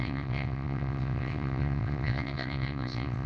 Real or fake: fake